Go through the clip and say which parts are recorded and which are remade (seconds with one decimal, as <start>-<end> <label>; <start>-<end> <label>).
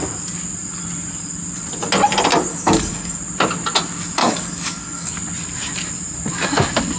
0.0-2.5 recorded; 2.5-3.2 remade; 3.2-4.2 recorded; 4.2-5.1 remade; 5.1-7.0 recorded